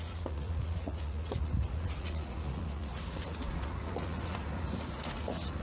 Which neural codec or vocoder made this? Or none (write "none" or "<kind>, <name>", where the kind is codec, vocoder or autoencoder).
vocoder, Vocos